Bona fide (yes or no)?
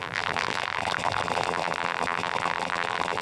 no